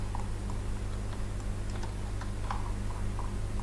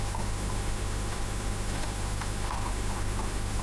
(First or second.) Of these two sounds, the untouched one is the first